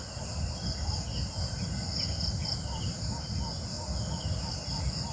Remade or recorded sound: recorded